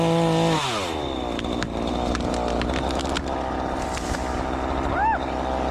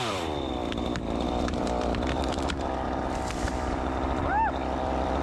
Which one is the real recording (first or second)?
first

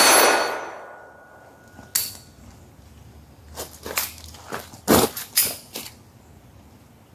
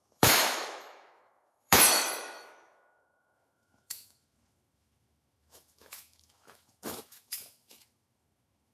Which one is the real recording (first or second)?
first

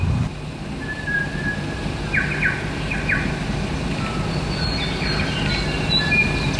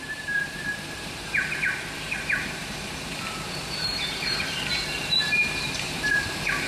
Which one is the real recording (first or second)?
first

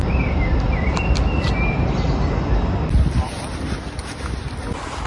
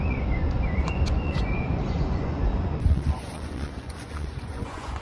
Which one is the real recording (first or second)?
first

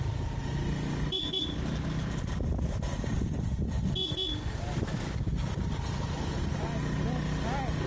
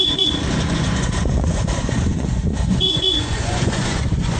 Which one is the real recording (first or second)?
first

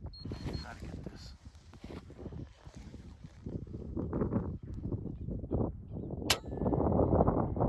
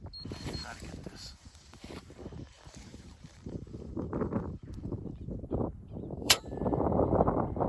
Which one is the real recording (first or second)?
first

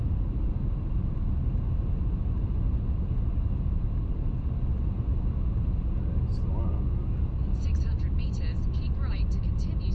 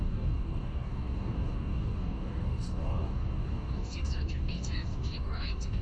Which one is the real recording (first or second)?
first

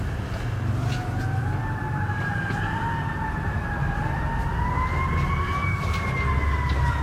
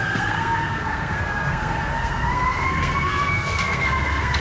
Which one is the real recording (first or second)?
first